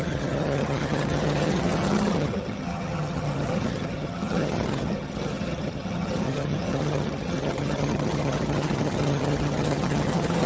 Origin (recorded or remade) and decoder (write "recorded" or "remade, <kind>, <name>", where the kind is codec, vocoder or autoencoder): remade, vocoder, HiFi-GAN